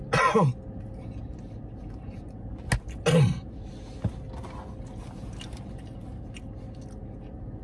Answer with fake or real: real